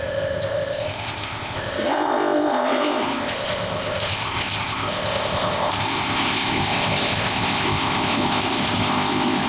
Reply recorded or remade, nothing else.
remade